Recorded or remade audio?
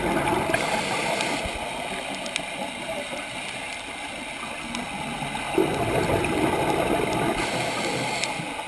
recorded